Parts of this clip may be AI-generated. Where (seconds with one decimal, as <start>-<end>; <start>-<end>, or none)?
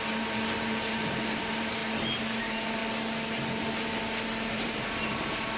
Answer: 0.0-1.8; 2.4-2.8; 4.5-5.6